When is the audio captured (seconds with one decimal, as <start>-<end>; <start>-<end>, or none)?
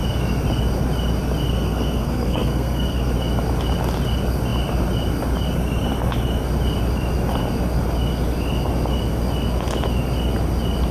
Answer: 0.0-1.5; 3.1-10.9